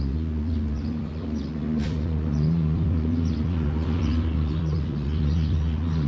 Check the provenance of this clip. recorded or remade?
remade